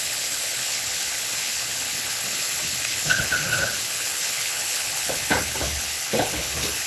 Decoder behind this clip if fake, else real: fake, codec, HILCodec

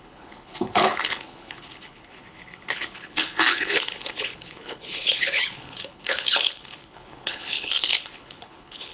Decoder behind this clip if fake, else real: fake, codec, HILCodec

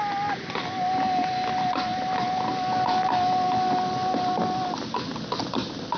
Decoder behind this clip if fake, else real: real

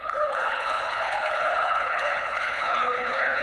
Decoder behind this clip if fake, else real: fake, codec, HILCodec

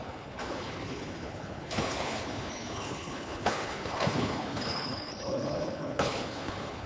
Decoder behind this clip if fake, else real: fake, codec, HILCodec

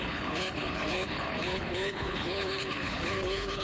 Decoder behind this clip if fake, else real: fake, codec, HILCodec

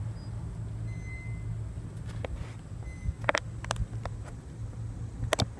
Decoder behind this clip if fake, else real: real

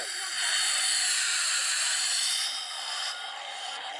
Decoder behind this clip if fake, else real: real